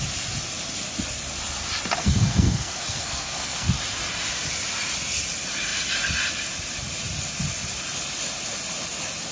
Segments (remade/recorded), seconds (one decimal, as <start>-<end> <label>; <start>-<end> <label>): 0.0-2.0 recorded; 2.0-3.7 remade; 3.7-9.3 recorded